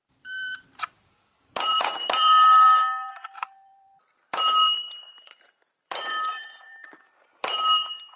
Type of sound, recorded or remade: remade